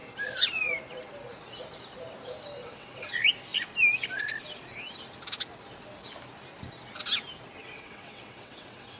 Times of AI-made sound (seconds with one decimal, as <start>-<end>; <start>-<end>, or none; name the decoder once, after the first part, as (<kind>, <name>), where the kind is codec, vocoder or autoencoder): 2.6-3.1 (vocoder, WaveNeXt); 7.6-9.0